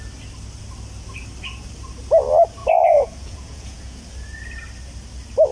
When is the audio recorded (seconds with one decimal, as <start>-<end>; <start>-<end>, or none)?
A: 0.0-2.6; 4.1-5.5